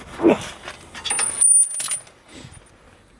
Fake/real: real